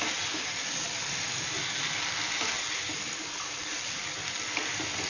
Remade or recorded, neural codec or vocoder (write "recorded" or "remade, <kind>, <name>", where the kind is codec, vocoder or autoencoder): recorded